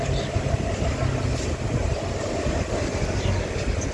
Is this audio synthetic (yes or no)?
no